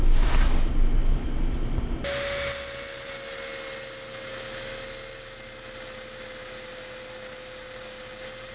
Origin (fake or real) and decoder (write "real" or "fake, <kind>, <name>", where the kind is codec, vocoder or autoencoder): real